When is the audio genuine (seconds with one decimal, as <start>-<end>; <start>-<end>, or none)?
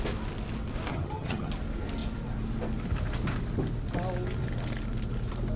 0.0-0.9; 1.5-5.6